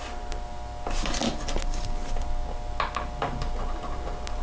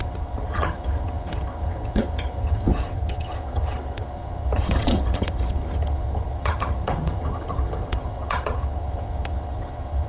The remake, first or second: second